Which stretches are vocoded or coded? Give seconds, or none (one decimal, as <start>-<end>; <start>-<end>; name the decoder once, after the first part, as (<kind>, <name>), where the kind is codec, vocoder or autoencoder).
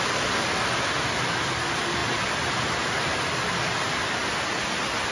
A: none